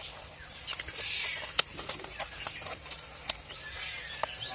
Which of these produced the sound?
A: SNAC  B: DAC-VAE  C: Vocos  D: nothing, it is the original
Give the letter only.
D